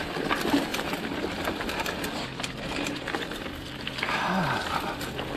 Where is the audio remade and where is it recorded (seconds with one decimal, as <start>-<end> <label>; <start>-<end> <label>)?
0.0-5.4 recorded